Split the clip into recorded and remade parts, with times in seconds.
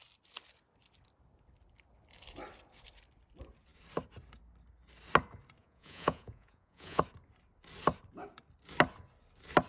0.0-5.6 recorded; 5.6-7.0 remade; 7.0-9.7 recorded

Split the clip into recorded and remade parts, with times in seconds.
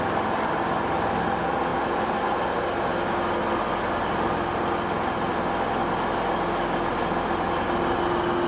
0.0-8.5 recorded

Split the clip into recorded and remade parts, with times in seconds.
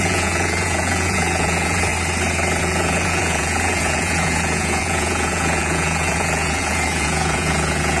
0.0-1.9 remade; 1.9-2.6 recorded; 2.6-8.0 remade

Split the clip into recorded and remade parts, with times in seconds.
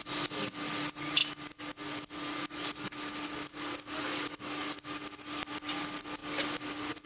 0.0-7.1 recorded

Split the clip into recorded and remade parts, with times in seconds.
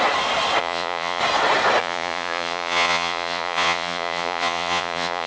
0.0-0.6 recorded; 0.6-1.2 remade; 1.2-1.8 recorded; 1.8-5.3 remade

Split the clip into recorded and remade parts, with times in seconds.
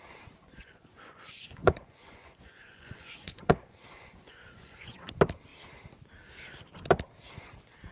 0.0-0.4 recorded; 0.4-5.1 remade; 5.1-7.9 recorded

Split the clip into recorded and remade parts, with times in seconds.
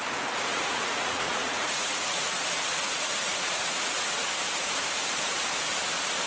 0.0-0.5 recorded; 0.5-4.3 remade; 4.3-6.3 recorded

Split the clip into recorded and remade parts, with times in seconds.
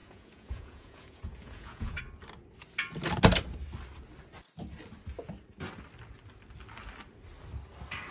0.0-2.0 remade; 2.0-8.1 recorded